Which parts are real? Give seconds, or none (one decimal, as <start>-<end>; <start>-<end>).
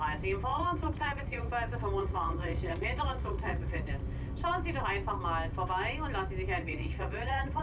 0.0-0.5; 1.5-2.0; 3.9-6.6